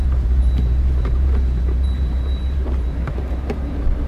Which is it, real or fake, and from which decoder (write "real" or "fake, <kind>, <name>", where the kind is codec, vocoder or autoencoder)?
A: fake, vocoder, BigVGAN v2